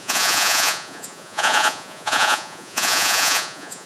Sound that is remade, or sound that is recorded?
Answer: remade